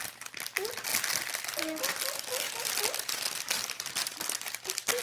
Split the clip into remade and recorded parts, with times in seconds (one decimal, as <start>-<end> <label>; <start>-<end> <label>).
0.0-5.0 recorded